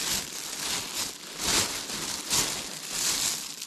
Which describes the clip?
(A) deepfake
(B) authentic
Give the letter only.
B